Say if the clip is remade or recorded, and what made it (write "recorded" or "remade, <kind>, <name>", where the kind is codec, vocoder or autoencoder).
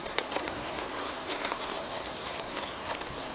remade, codec, SNAC